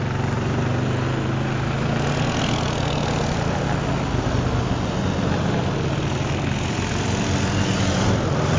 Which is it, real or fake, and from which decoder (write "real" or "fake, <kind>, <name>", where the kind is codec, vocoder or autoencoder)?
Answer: real